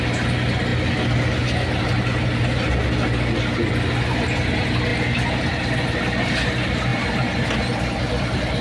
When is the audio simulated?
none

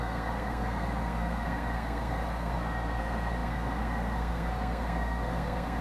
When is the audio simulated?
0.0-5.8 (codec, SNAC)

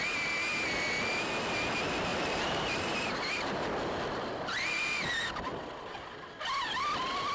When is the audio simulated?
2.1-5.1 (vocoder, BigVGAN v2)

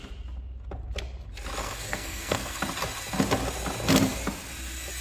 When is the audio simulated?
1.6-2.6 (codec, SNAC)